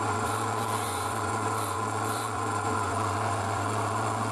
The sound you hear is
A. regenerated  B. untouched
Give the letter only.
A